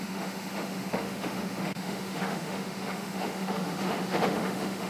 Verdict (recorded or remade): remade